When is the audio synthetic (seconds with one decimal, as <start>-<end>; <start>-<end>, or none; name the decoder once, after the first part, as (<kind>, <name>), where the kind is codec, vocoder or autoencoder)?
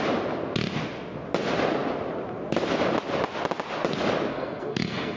4.3-5.2 (codec, SNAC)